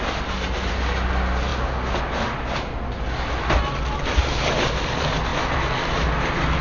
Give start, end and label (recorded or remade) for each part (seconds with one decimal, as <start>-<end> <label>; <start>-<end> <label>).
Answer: 0.0-6.6 recorded